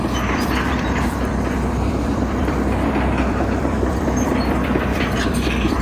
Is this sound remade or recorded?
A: remade